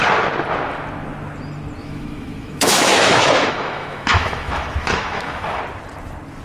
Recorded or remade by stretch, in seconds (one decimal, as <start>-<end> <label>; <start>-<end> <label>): 0.0-1.8 recorded; 1.8-5.6 remade; 5.6-6.4 recorded